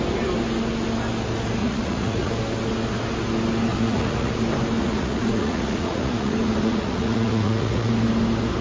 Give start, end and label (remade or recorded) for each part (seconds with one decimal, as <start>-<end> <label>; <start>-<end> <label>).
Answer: 0.0-1.6 recorded; 1.6-2.3 remade; 2.3-3.7 recorded; 3.7-4.3 remade; 4.3-4.8 recorded; 4.8-7.9 remade; 7.9-8.6 recorded